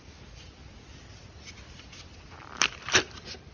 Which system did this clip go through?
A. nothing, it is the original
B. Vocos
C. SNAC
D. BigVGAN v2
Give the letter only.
A